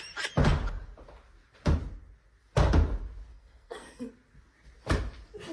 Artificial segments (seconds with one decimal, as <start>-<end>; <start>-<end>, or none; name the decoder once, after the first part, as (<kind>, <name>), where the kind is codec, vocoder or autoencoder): 3.3-4.1 (codec, SNAC)